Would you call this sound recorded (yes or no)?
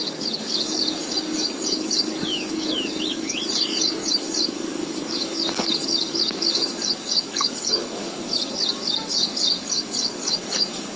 no